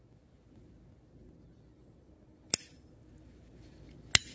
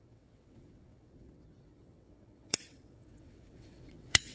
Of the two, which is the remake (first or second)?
second